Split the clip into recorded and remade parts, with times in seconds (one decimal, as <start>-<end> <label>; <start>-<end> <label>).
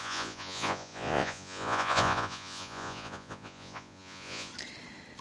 0.0-4.5 remade; 4.5-5.2 recorded